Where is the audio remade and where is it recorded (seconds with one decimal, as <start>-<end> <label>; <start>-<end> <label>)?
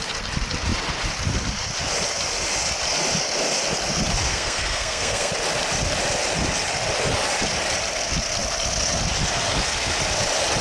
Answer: 0.0-4.3 recorded; 4.3-5.3 remade; 5.3-10.6 recorded